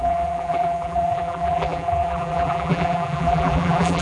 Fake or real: fake